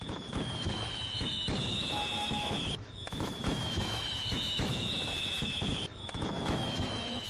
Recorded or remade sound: remade